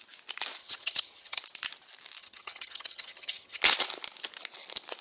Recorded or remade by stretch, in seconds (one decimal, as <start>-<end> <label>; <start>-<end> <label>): 0.0-0.6 recorded; 0.6-1.4 remade; 1.4-2.2 recorded; 2.2-3.6 remade; 3.6-5.0 recorded